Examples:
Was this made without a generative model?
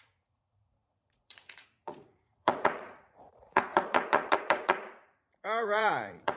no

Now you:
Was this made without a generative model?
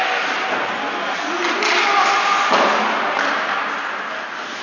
yes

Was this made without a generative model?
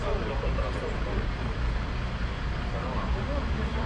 yes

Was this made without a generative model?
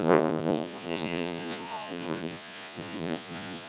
no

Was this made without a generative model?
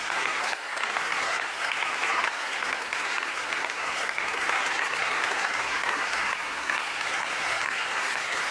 no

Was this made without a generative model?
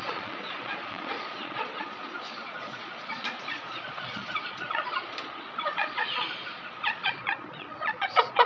no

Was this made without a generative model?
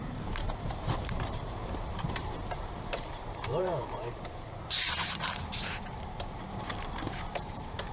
no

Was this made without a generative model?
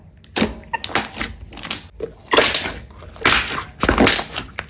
yes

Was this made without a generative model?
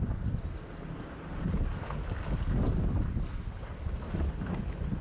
yes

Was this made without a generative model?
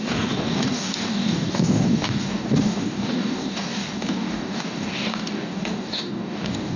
no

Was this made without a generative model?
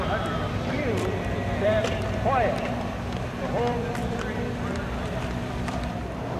no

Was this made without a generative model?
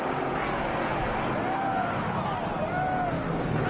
yes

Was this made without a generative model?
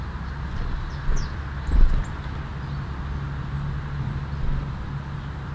yes